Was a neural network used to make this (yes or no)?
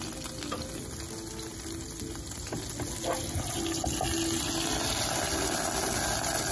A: no